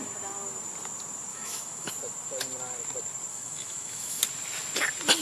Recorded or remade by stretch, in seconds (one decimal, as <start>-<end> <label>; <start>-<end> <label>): 0.0-1.3 recorded; 1.3-1.9 remade; 1.9-3.3 recorded; 3.3-4.2 remade; 4.2-5.2 recorded